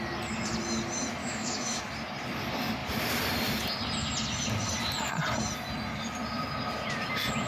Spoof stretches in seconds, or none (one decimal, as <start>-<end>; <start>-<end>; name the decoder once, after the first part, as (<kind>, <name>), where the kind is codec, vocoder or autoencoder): 1.2-1.8 (autoencoder, DAC-VAE)